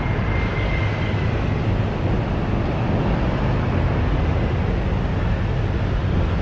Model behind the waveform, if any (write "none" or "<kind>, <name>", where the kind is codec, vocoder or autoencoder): none